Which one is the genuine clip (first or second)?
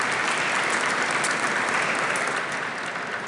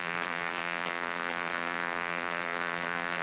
first